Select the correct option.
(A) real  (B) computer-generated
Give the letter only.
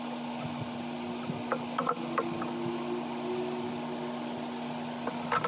A